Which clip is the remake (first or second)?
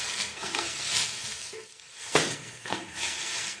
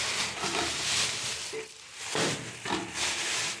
first